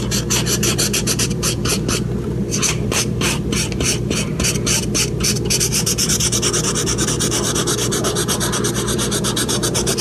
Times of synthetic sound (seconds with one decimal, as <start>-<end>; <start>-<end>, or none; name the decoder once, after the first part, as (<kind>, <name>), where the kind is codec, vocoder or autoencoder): 0.0-10.0 (vocoder, BigVGAN v2)